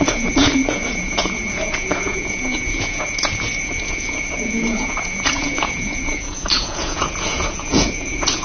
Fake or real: fake